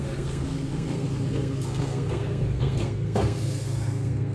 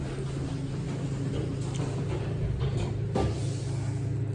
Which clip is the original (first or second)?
second